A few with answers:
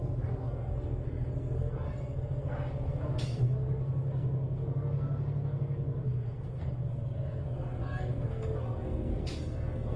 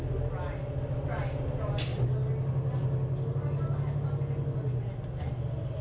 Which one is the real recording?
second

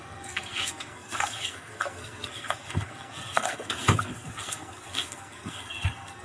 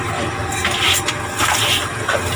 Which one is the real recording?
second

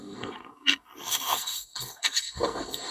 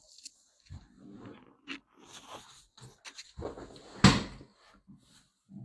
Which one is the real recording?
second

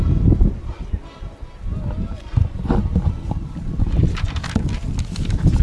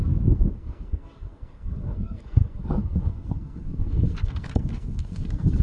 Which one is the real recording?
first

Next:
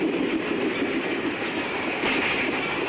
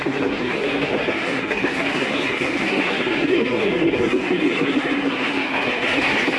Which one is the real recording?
first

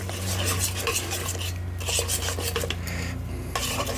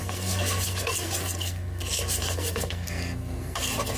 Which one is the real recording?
first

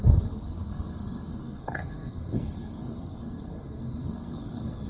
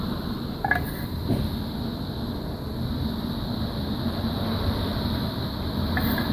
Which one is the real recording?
second